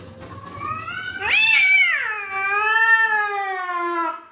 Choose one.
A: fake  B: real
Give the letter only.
B